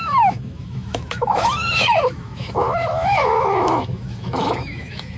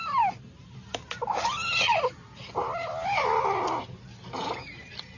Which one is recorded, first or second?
second